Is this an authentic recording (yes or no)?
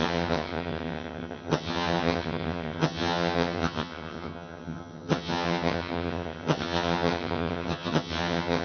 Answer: no